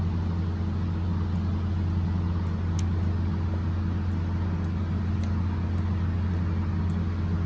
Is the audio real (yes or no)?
yes